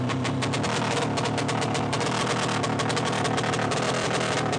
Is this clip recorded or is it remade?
recorded